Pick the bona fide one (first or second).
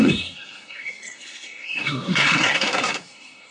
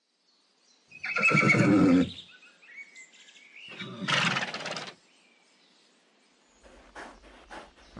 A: second